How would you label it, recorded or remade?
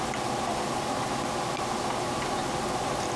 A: recorded